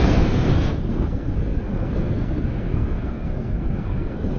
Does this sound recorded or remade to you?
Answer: remade